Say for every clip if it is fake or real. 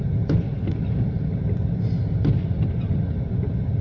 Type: real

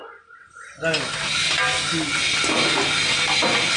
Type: real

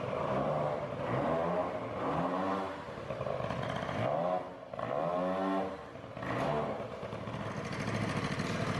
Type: real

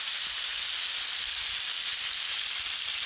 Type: real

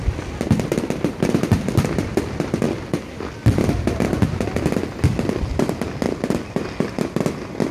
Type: real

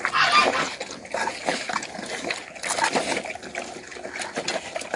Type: real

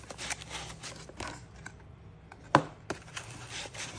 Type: real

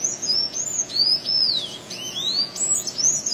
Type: fake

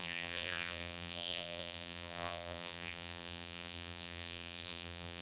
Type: fake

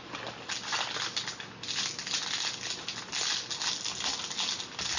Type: real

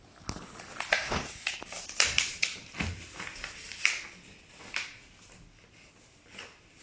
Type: real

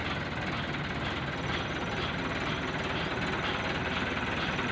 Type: real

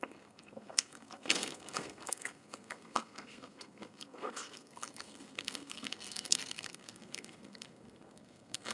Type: fake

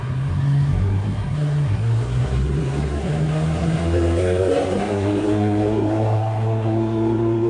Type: fake